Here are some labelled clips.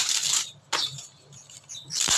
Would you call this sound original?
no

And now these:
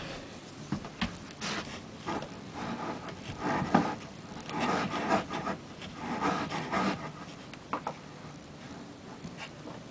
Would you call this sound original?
yes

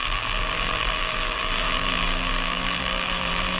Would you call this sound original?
no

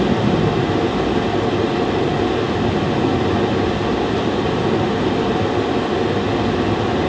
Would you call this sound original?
yes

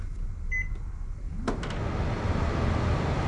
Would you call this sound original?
yes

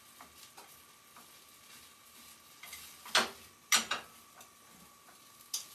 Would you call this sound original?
yes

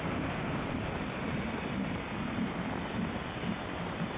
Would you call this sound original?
no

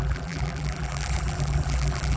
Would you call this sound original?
no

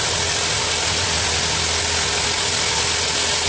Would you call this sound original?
yes